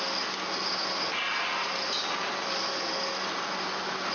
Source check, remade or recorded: recorded